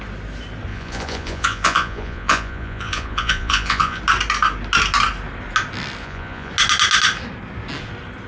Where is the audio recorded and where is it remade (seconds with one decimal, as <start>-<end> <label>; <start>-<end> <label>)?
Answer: 0.0-0.7 recorded; 0.7-4.0 remade; 4.0-6.0 recorded; 6.0-6.5 remade; 6.5-8.3 recorded